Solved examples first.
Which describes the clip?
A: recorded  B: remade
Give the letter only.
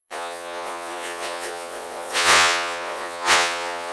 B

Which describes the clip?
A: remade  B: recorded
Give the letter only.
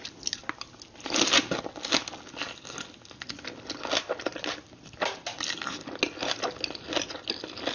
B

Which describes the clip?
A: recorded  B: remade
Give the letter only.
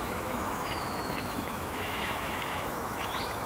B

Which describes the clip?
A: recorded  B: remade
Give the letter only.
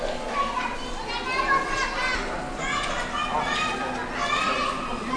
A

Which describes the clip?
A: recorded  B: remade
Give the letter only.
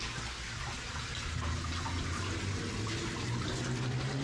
A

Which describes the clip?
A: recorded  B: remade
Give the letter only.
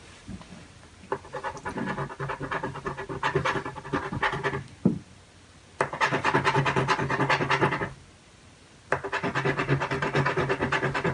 A